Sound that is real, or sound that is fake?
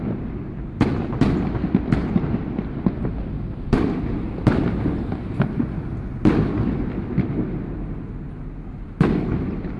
real